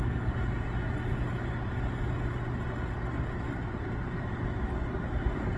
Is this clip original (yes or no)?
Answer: yes